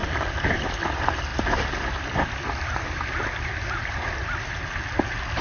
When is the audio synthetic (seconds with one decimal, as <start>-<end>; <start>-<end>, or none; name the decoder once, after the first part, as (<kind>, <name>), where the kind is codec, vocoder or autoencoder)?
none